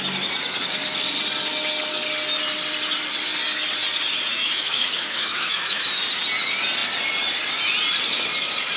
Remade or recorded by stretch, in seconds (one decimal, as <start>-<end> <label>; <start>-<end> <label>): 0.0-4.3 recorded; 4.3-5.9 remade; 5.9-8.8 recorded